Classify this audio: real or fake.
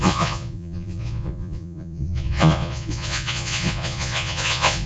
fake